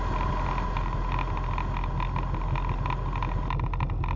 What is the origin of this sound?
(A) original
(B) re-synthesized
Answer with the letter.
A